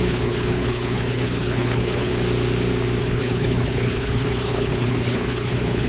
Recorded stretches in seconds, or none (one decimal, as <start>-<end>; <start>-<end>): 2.1-3.0

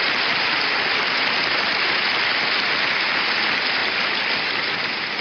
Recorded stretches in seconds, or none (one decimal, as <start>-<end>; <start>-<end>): 0.0-5.2

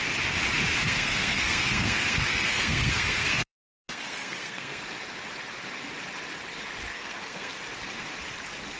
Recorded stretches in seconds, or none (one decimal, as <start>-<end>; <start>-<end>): 0.0-0.8; 4.8-6.9; 7.5-8.8

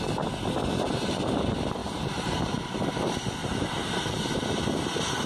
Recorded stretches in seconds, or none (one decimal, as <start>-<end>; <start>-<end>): 0.0-0.7; 1.3-1.8; 2.5-3.4; 4.6-5.3